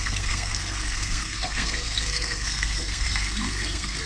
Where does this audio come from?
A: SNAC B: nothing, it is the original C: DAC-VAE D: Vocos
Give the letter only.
A